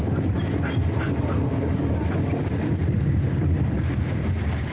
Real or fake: real